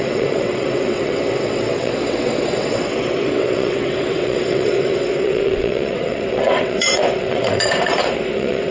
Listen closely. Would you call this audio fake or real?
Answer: fake